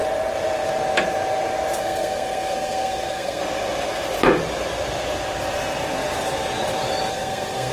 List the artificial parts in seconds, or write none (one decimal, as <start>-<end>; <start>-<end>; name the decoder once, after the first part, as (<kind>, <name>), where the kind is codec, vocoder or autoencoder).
1.8-3.4 (codec, SNAC); 7.1-7.7